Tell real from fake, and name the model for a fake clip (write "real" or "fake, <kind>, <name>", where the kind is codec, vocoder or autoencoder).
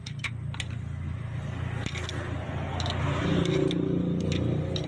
real